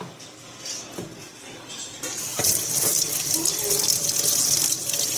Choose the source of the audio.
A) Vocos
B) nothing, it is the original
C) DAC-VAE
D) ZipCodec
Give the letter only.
B